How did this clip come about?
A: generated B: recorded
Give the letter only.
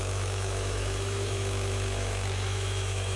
A